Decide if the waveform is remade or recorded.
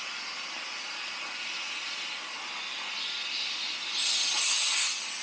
recorded